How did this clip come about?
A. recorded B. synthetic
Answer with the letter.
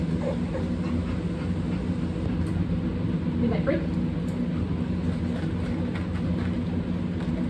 A